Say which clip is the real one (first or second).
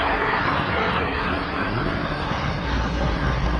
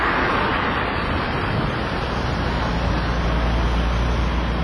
second